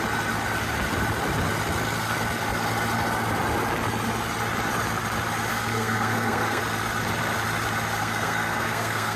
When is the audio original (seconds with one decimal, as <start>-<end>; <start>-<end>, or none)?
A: 0.0-5.5; 6.6-8.0